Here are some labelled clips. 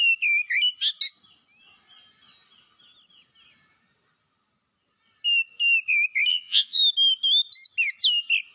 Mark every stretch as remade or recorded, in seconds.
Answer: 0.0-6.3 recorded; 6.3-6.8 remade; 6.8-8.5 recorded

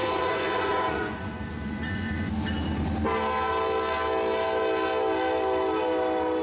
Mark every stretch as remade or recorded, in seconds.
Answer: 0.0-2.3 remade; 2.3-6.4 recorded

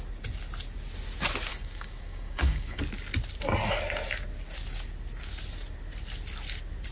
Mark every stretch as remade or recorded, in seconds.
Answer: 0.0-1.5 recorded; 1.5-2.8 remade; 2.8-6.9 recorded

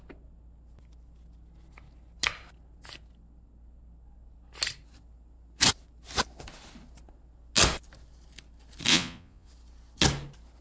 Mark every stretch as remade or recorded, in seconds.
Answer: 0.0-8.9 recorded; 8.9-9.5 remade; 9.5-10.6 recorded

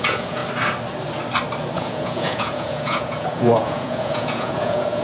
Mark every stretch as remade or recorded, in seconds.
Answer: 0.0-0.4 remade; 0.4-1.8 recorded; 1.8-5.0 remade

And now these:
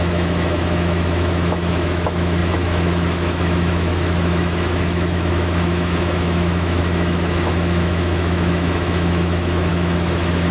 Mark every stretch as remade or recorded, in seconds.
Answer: 0.0-10.5 remade

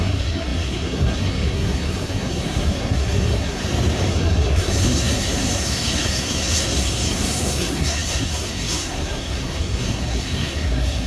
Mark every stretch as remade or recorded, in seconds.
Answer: 0.0-3.6 remade; 3.6-4.1 recorded; 4.1-11.1 remade